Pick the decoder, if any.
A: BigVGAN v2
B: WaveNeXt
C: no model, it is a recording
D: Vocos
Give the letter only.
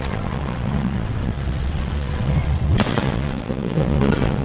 B